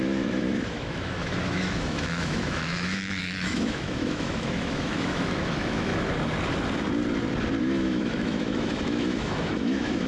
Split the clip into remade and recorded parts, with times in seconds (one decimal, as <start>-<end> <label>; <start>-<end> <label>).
0.0-5.9 remade; 5.9-7.6 recorded; 7.6-10.1 remade

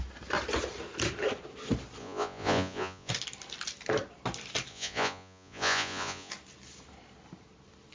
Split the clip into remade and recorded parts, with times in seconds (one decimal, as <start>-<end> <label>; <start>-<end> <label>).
0.0-2.0 recorded; 2.0-3.1 remade; 3.1-4.7 recorded; 4.7-6.3 remade; 6.3-7.9 recorded